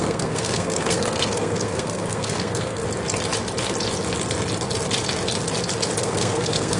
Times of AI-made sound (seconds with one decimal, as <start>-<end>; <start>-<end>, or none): 0.0-2.8; 6.0-6.8